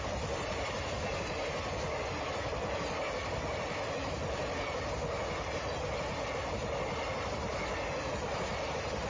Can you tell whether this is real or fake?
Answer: real